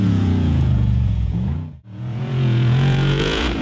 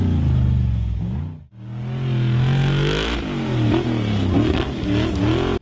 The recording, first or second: second